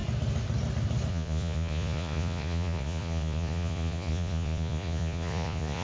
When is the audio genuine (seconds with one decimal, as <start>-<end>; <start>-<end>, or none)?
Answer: 0.0-1.1